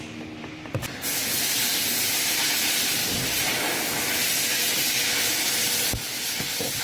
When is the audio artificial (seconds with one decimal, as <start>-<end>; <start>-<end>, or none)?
3.0-3.5